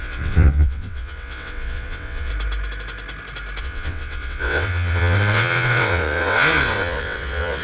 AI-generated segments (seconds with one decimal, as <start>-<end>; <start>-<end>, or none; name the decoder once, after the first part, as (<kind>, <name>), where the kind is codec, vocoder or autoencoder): 0.0-2.3 (vocoder, WaveNeXt); 3.6-7.6